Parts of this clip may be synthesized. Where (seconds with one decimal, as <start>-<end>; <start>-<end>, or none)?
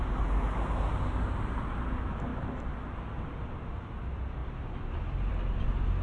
none